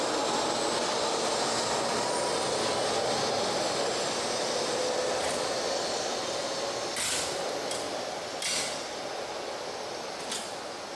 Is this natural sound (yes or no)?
yes